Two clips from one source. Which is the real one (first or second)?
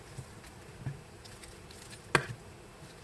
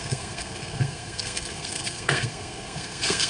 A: first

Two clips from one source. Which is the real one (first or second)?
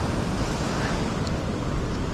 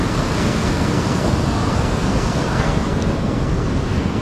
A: first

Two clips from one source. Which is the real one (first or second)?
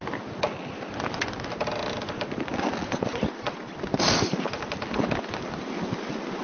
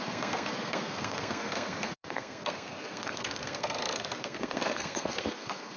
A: first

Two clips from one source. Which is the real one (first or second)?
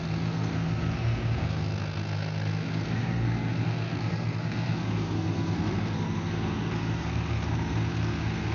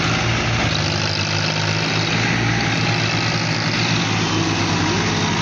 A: second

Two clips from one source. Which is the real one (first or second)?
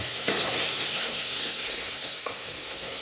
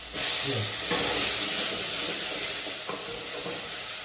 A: second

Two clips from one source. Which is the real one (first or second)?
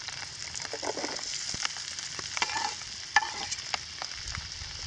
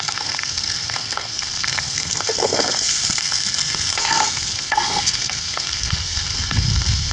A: first